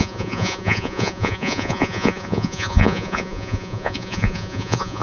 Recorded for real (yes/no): no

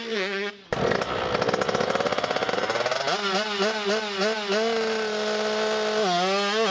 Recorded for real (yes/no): yes